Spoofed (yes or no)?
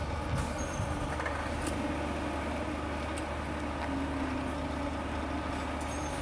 no